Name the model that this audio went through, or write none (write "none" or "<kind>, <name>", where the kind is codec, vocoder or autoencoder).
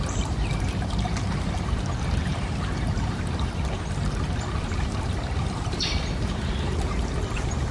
vocoder, BigVGAN v2